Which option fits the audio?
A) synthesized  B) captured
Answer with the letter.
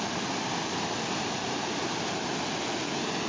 A